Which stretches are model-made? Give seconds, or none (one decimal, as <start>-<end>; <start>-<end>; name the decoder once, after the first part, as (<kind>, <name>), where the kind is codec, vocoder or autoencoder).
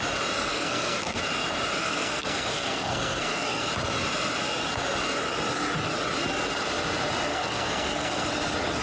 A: 0.5-1.2 (codec, SNAC); 1.8-3.7; 7.3-8.3